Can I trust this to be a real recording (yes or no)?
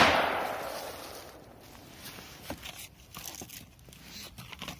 yes